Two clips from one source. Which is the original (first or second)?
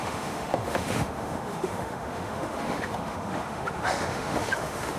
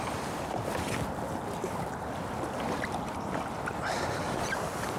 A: second